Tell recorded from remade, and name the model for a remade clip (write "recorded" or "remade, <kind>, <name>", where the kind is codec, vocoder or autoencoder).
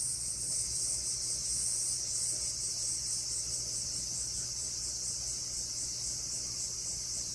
recorded